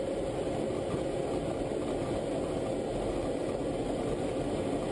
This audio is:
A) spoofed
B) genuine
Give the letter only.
B